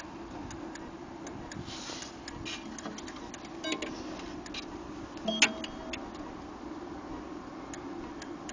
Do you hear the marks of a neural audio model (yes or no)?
no